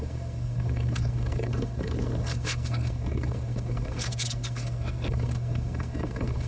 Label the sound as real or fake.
fake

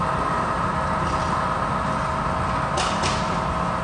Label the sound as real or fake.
real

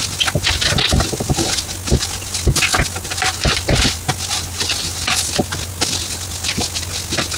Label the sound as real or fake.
real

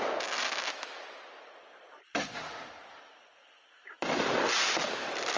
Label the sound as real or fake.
real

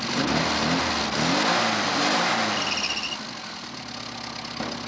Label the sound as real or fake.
real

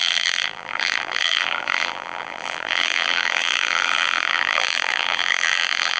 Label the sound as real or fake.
fake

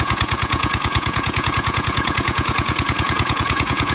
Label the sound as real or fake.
fake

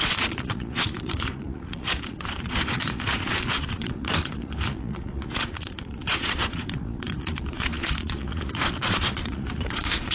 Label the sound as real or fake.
fake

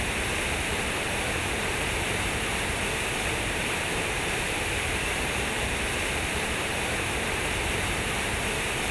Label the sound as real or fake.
fake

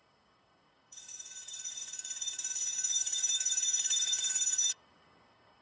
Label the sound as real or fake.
fake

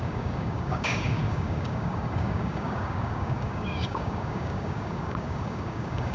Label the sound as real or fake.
fake